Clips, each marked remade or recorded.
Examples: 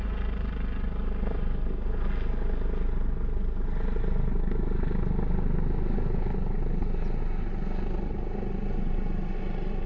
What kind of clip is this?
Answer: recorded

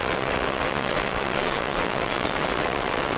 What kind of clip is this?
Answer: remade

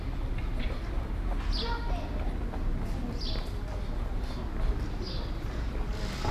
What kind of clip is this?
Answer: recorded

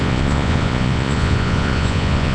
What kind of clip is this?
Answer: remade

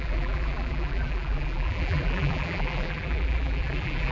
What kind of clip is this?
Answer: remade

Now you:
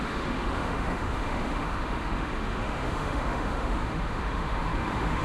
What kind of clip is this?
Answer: remade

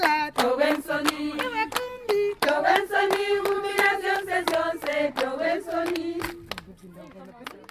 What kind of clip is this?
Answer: recorded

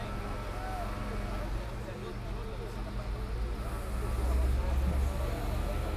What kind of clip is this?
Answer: recorded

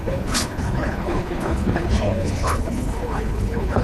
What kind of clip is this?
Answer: remade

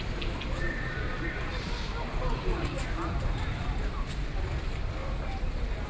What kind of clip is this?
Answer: recorded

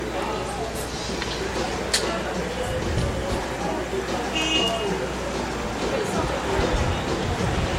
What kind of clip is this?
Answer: recorded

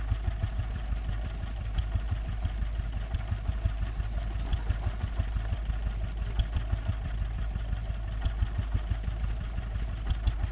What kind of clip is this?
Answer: recorded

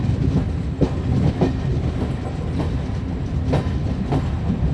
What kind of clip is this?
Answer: recorded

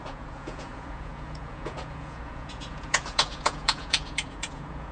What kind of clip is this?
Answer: remade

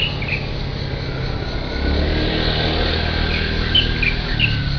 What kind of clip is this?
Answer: recorded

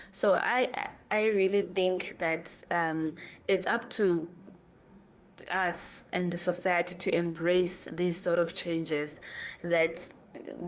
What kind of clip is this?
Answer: remade